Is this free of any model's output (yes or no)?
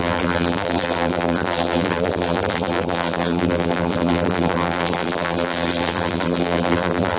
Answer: no